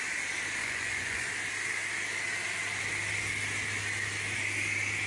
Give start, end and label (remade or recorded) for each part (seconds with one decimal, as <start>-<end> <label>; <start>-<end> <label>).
0.0-0.6 recorded; 0.6-1.3 remade; 1.3-5.1 recorded